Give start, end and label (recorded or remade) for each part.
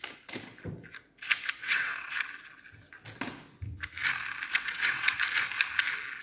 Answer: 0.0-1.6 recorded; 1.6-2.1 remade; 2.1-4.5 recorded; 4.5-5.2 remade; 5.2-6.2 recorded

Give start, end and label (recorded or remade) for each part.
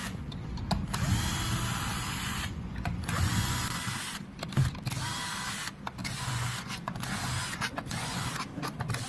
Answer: 0.0-0.6 remade; 0.6-1.9 recorded; 1.9-3.8 remade; 3.8-6.0 recorded; 6.0-8.3 remade; 8.3-9.1 recorded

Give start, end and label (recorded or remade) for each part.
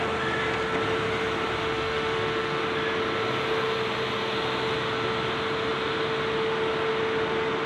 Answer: 0.0-1.6 recorded; 1.6-2.6 remade; 2.6-7.7 recorded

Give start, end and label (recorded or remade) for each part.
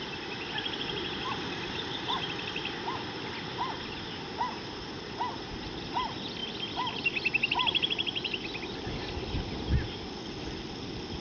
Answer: 0.0-11.2 recorded